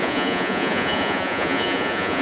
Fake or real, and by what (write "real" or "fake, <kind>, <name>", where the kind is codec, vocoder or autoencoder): fake, vocoder, Vocos